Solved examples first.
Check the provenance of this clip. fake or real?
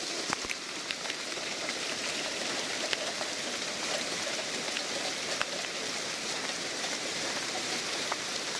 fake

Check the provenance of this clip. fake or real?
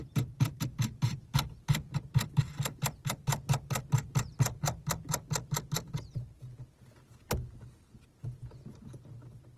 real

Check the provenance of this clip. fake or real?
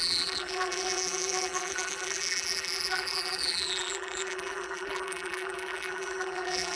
fake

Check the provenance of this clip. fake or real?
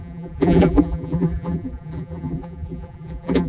fake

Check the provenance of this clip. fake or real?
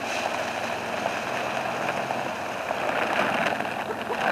real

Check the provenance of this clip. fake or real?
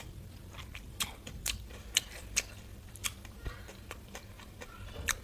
fake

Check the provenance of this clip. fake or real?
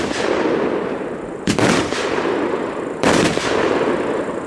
fake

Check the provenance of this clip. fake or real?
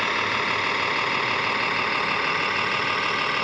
real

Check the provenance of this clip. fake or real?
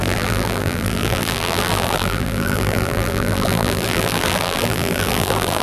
fake